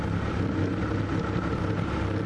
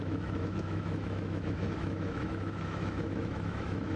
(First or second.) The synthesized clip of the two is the second